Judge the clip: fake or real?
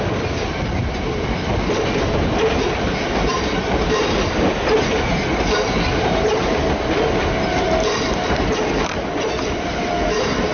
real